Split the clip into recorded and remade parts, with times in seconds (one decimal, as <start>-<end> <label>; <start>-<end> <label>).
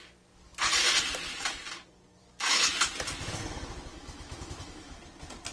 0.0-2.2 recorded; 2.2-2.7 remade; 2.7-3.9 recorded; 3.9-5.0 remade; 5.0-5.5 recorded